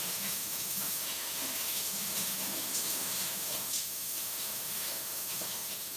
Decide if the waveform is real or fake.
fake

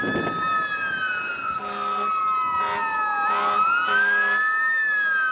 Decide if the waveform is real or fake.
real